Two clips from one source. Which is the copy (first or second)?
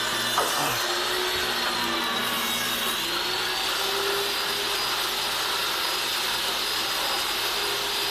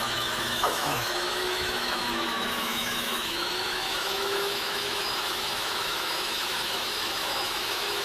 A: second